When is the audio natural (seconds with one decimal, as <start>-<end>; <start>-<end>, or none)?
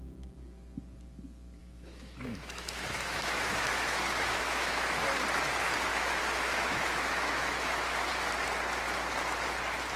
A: 0.0-1.6; 5.0-5.9; 8.1-10.0